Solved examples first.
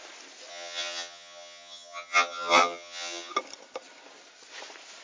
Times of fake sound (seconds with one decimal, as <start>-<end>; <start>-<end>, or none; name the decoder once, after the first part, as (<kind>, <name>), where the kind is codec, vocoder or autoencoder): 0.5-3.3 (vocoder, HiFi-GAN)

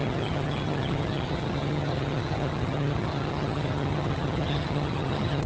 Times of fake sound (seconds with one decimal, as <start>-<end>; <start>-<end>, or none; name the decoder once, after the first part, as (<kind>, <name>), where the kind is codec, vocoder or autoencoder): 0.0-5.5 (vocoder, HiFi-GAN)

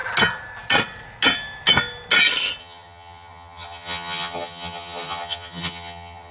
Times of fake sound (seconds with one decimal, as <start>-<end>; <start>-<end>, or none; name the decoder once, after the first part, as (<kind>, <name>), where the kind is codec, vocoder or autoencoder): 2.6-6.3 (vocoder, HiFi-GAN)

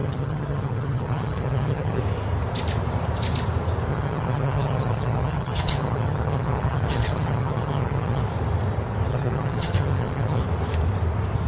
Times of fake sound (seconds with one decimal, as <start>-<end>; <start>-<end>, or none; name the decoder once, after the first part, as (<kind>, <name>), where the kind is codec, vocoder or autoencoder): 0.0-2.0 (vocoder, HiFi-GAN); 3.9-8.2; 9.1-10.4